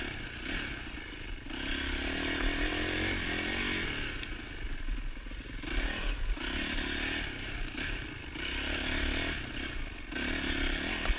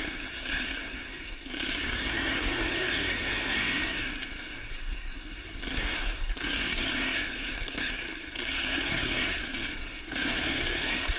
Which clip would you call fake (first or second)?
second